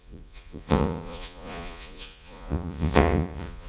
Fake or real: fake